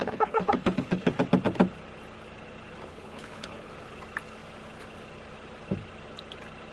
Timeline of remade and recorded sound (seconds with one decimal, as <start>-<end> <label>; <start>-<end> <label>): 0.0-1.1 remade; 1.1-2.9 recorded; 2.9-3.7 remade; 3.7-6.7 recorded